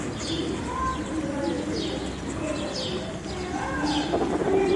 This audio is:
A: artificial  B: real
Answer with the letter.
B